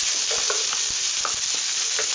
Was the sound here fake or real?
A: real